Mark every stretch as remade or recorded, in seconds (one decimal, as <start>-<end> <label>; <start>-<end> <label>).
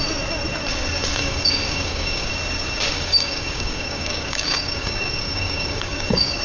0.0-1.2 recorded; 1.2-2.3 remade; 2.3-2.9 recorded; 2.9-6.4 remade